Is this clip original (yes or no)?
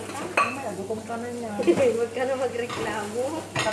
yes